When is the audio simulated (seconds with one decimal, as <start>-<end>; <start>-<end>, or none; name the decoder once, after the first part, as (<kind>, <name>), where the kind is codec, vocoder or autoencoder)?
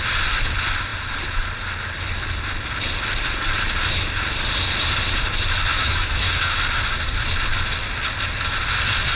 5.7-6.5 (autoencoder, DAC-VAE)